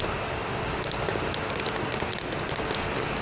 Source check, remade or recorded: recorded